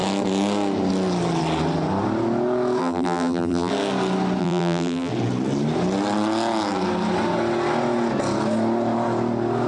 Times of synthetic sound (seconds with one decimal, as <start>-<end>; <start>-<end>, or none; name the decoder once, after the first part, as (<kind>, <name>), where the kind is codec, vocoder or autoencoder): 2.8-3.7 (vocoder, BigVGAN v2); 4.4-5.1